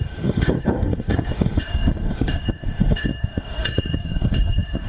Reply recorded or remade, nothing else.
remade